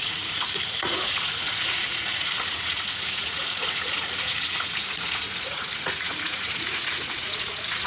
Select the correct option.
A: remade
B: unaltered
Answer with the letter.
A